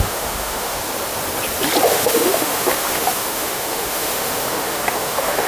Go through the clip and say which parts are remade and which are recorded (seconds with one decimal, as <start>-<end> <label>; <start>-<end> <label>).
0.0-0.8 remade; 0.8-1.9 recorded; 1.9-5.5 remade